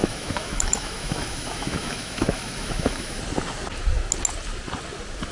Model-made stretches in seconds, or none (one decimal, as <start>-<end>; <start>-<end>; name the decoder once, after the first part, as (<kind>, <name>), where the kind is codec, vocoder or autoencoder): 0.0-3.2 (autoencoder, DAC-VAE)